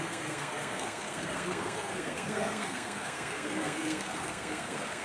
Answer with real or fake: fake